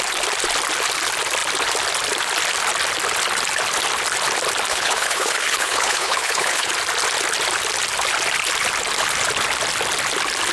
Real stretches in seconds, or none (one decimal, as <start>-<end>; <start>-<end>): 0.0-4.7; 6.7-10.5